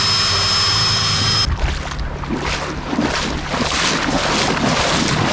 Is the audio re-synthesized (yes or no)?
no